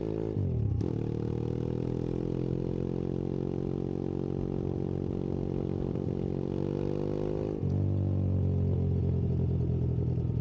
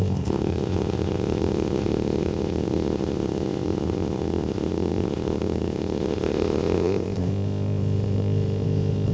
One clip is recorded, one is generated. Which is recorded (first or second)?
first